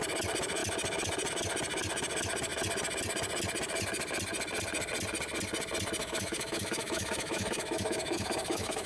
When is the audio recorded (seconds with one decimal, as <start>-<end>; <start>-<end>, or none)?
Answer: 0.0-6.0